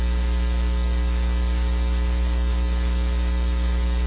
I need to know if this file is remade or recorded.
recorded